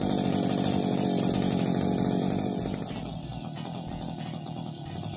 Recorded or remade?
recorded